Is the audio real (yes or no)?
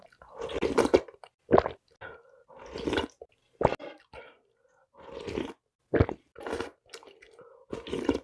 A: yes